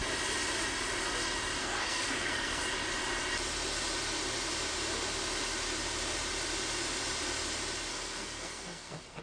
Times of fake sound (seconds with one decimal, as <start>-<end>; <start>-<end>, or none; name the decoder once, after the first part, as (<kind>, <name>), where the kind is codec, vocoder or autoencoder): 1.6-2.6 (codec, SNAC); 7.9-9.2